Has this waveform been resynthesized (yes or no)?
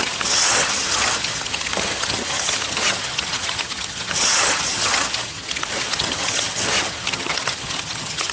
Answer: yes